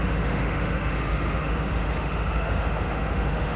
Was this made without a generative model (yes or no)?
no